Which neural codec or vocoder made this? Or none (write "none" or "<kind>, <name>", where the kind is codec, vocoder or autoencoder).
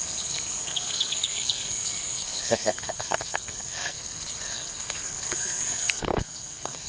codec, SNAC